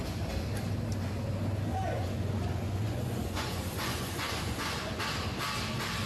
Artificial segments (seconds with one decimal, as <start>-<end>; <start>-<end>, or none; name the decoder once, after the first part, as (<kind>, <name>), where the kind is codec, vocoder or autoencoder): 1.7-5.0 (vocoder, Vocos)